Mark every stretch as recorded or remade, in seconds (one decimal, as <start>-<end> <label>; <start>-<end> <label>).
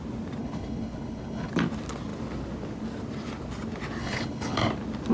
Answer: 0.0-0.4 recorded; 0.4-1.5 remade; 1.5-4.0 recorded; 4.0-4.6 remade; 4.6-5.1 recorded